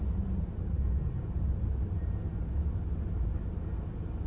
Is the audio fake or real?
real